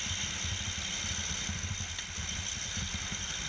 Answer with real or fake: real